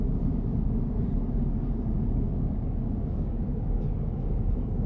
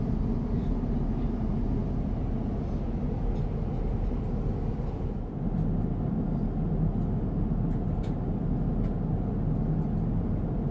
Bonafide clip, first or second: second